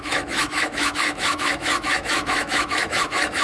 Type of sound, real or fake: fake